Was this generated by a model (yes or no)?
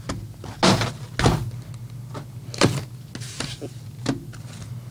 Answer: no